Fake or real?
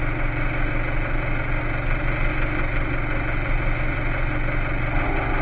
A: real